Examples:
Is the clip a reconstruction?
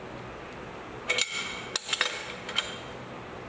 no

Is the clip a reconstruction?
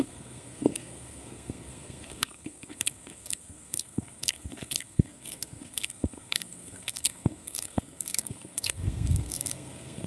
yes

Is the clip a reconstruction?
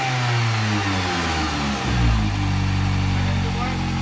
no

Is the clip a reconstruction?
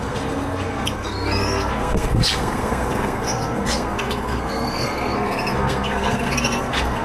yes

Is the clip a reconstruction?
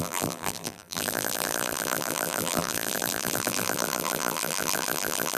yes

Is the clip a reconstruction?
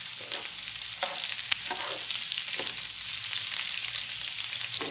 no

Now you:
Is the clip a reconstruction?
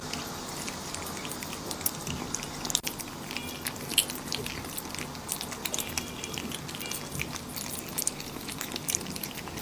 no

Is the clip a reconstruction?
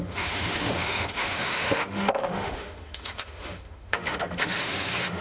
yes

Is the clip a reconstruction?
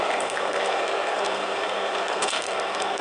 yes